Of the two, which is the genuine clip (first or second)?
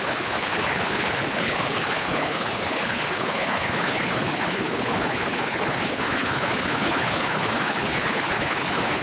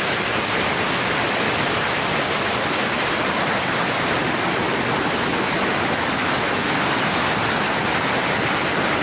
second